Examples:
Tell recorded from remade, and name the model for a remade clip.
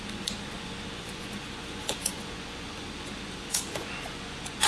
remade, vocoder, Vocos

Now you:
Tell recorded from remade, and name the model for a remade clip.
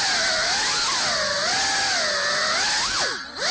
recorded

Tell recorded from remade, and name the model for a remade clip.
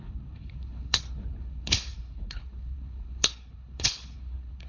remade, codec, HILCodec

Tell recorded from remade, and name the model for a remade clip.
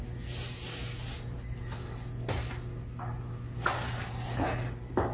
recorded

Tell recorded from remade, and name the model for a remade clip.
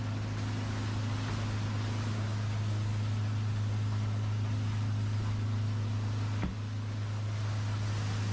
recorded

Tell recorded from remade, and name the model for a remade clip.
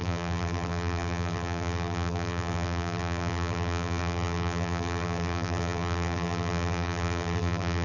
remade, vocoder, BigVGAN v2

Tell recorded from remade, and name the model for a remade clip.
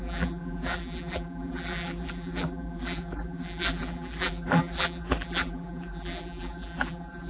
remade, vocoder, BigVGAN v2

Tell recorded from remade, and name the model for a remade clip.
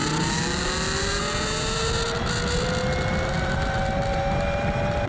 recorded